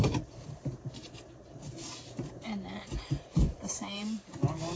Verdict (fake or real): fake